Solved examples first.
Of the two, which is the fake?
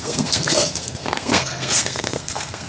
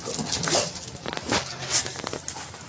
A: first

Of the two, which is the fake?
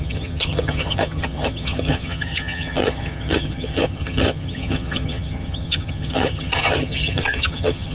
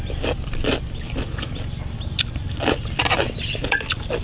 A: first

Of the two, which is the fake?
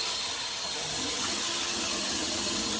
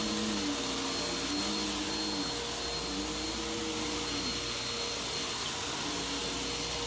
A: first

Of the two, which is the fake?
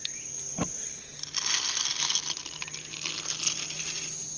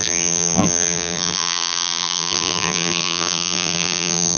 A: second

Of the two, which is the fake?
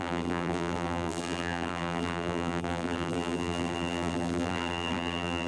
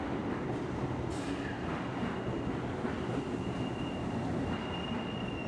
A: first